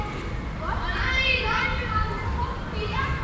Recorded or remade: recorded